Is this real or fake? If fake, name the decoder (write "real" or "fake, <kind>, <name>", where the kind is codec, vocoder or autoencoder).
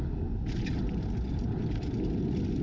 real